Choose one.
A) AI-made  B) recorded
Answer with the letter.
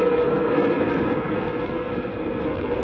A